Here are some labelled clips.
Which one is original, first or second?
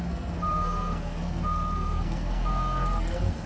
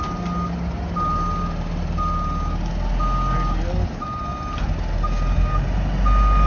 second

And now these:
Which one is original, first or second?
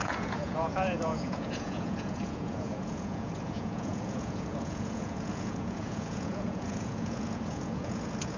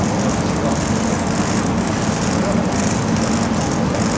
second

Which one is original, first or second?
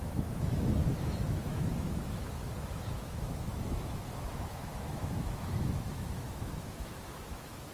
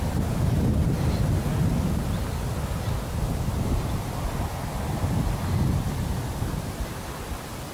second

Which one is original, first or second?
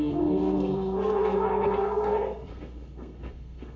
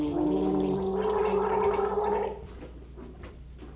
second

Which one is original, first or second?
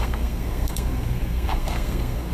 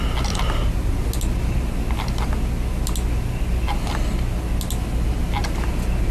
second